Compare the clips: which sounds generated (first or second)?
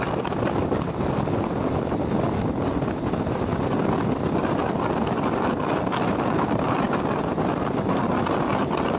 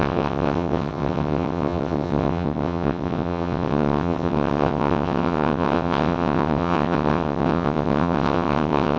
second